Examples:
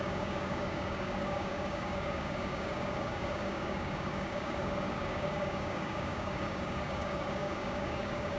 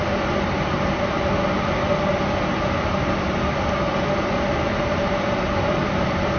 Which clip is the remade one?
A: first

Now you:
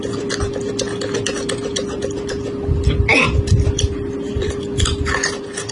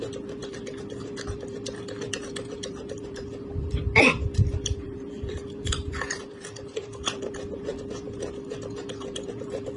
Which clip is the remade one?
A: second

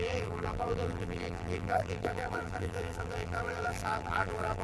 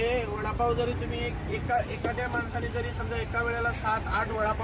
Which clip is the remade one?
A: first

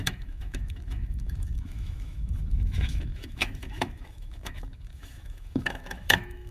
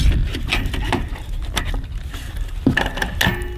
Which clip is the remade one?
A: first